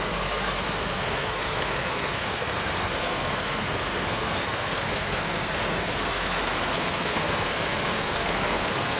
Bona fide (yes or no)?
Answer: no